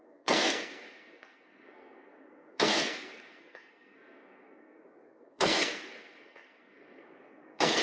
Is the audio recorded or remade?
remade